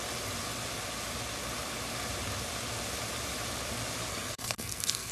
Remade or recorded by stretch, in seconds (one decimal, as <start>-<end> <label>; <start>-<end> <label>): 0.0-4.1 recorded; 4.1-5.1 remade